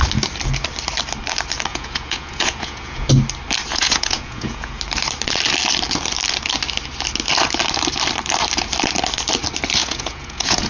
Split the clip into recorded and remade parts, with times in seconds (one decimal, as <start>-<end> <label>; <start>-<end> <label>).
0.0-1.7 recorded; 1.7-3.1 remade; 3.1-3.7 recorded; 3.7-4.8 remade; 4.8-9.8 recorded; 9.8-10.7 remade